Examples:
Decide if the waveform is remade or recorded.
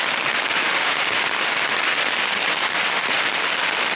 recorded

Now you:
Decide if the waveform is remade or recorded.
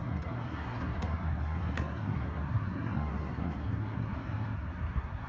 remade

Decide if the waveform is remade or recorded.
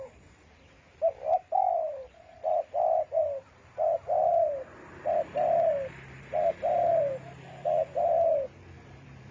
remade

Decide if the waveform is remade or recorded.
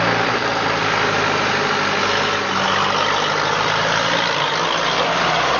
recorded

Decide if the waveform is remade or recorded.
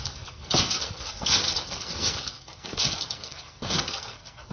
remade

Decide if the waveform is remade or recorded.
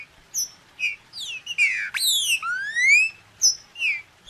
recorded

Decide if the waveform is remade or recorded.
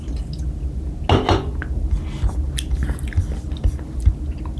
recorded